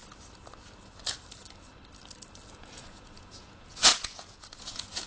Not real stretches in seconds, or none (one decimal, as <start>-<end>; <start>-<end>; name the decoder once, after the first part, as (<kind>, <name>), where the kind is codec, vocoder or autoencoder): 2.5-5.1 (vocoder, Vocos)